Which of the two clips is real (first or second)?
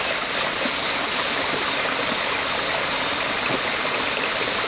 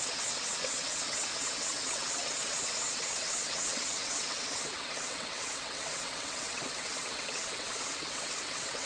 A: first